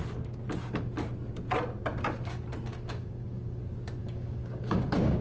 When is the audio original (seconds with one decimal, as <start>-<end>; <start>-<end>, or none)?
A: 0.0-2.7; 3.6-4.0